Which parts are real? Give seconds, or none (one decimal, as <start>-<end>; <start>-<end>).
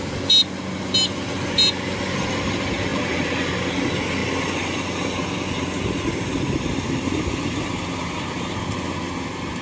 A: 0.0-9.6